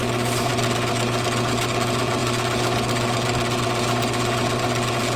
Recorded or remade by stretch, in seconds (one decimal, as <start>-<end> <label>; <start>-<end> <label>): 0.0-5.2 recorded